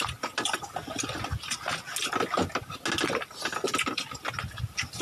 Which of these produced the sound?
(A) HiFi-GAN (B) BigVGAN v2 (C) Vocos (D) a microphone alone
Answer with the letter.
D